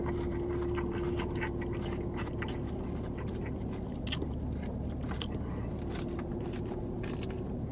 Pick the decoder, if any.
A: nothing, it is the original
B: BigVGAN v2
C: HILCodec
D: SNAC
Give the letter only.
A